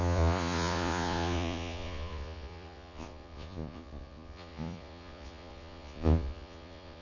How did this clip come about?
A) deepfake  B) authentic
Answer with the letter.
A